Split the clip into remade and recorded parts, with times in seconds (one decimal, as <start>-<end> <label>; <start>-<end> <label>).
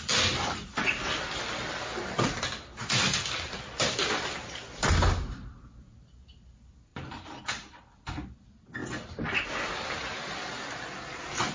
0.0-11.5 recorded